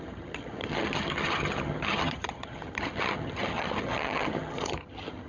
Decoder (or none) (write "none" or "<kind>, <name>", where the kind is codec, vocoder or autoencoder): vocoder, HiFi-GAN